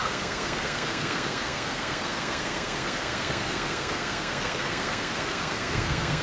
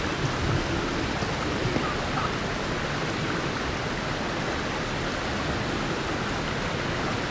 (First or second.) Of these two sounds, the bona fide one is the second